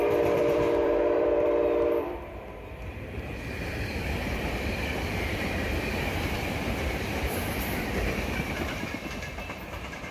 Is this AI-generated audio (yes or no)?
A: yes